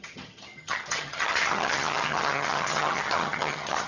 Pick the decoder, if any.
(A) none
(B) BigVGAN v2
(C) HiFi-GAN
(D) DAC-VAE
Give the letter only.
C